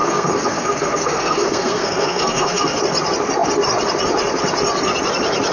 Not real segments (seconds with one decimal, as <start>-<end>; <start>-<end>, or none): 0.0-2.8